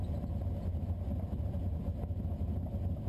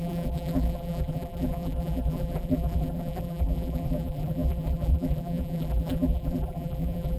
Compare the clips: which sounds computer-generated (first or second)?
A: second